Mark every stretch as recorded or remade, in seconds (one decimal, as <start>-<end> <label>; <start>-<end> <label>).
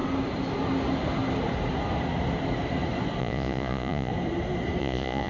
0.0-3.2 recorded; 3.2-4.1 remade; 4.1-4.8 recorded; 4.8-5.3 remade